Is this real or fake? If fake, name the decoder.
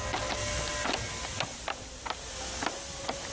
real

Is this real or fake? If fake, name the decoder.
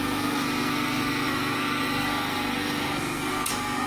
fake, codec, SNAC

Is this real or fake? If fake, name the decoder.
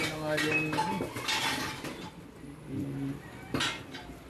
real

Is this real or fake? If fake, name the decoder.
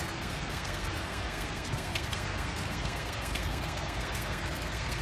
fake, codec, SNAC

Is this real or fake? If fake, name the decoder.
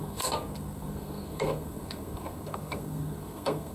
fake, codec, SNAC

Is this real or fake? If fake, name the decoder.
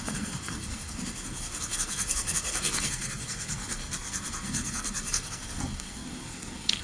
fake, codec, SNAC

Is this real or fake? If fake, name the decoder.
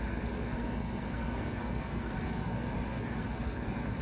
fake, codec, SNAC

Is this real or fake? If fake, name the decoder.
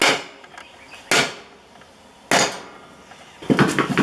real